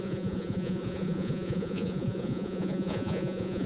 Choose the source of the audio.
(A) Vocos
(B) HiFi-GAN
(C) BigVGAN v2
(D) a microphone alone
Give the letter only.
A